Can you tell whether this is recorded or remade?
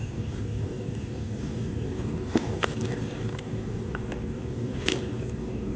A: remade